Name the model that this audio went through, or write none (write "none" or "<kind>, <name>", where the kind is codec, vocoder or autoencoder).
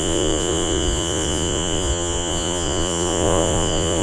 vocoder, Vocos